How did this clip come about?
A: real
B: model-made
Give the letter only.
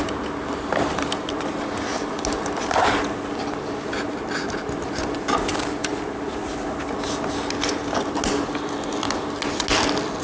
A